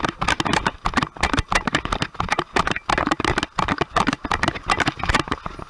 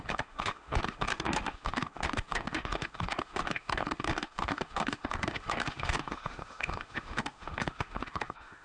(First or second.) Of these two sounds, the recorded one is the first